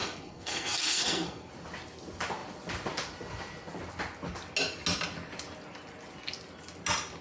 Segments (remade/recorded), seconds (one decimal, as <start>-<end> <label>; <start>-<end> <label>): 0.0-1.5 remade; 1.5-7.2 recorded